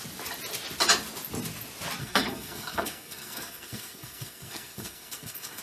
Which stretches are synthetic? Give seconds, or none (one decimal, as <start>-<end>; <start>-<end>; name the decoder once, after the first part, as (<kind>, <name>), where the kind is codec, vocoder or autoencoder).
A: 2.0-5.6 (codec, SNAC)